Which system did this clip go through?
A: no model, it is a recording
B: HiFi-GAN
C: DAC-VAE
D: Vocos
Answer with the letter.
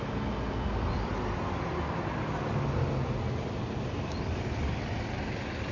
A